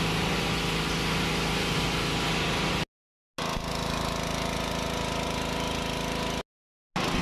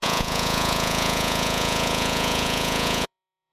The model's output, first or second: second